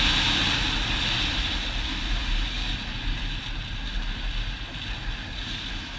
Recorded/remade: recorded